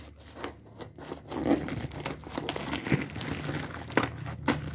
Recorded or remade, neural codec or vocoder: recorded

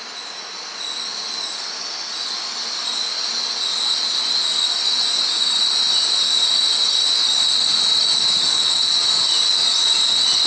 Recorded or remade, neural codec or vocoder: recorded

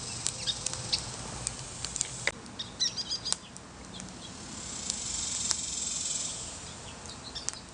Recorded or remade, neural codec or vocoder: recorded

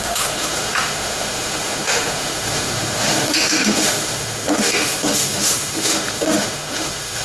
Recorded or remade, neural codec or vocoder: remade, autoencoder, DAC-VAE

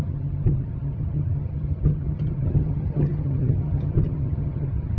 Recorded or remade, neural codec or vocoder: remade, vocoder, HiFi-GAN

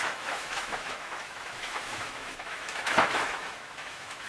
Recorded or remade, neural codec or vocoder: remade, autoencoder, DAC-VAE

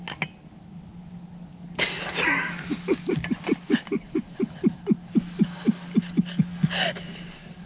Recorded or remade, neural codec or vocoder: recorded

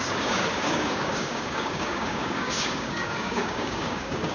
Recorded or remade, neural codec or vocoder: remade, codec, DAC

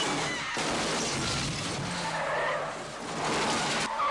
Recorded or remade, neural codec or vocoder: recorded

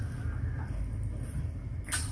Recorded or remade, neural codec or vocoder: recorded